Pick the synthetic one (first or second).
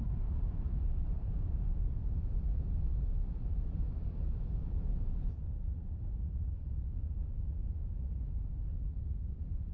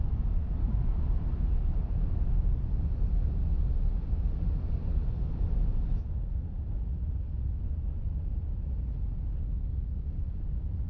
first